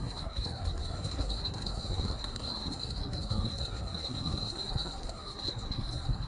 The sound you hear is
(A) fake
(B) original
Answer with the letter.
A